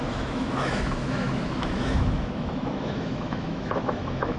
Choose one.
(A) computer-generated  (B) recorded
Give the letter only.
A